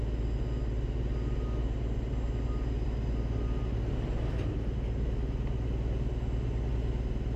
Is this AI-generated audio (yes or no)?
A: no